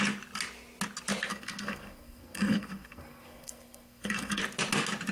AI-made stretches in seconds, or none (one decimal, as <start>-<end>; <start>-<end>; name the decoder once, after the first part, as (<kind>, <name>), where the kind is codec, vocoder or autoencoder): 1.3-4.4 (codec, SNAC)